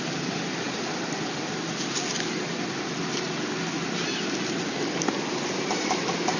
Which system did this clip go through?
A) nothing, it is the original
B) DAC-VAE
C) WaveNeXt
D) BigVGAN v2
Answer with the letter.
A